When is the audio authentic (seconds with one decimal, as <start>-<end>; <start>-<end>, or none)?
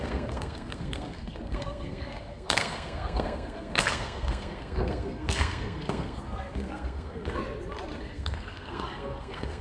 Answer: 7.4-8.0